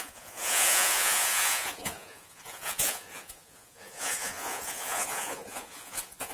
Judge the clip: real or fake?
fake